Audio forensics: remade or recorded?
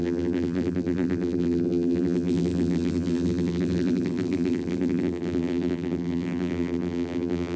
remade